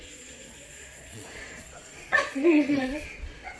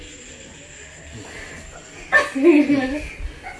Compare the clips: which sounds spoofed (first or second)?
first